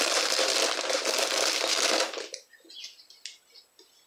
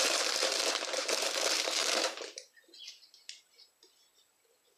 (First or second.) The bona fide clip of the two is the first